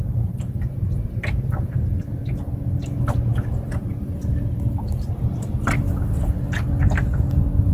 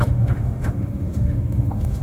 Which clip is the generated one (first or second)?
second